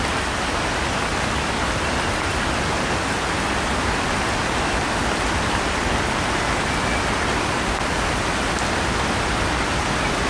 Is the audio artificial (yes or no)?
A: no